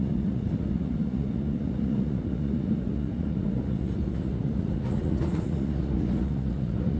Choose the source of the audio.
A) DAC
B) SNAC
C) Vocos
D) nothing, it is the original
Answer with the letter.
C